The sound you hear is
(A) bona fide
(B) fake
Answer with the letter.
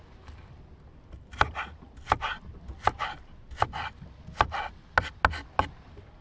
A